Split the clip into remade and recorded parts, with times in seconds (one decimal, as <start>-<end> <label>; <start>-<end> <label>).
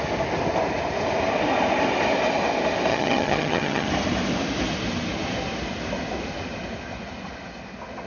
0.0-2.9 recorded; 2.9-3.9 remade; 3.9-8.1 recorded